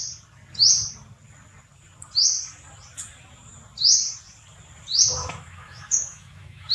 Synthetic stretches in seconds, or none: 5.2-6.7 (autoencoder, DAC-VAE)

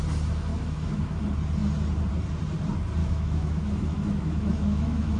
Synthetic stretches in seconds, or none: 0.5-1.2 (autoencoder, DAC-VAE); 3.0-5.2

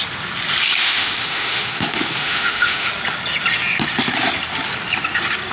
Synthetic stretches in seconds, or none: 0.8-2.9 (autoencoder, DAC-VAE)

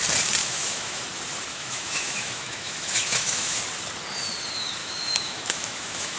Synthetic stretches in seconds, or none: 0.4-1.0 (autoencoder, DAC-VAE); 1.5-3.6; 4.8-6.2

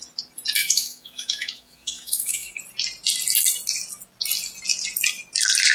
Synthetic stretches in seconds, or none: 0.6-2.6 (autoencoder, DAC-VAE)

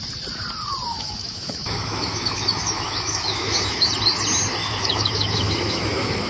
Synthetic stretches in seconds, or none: 0.9-3.9 (autoencoder, DAC-VAE); 4.6-6.3

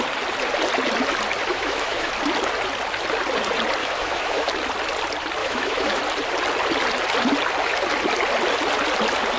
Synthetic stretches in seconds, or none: 1.5-2.1 (autoencoder, DAC-VAE); 3.8-4.5; 5.4-6.0